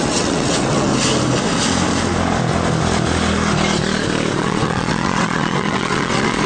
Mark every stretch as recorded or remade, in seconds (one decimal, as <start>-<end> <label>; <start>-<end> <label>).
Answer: 0.0-0.9 remade; 0.9-4.4 recorded; 4.4-6.5 remade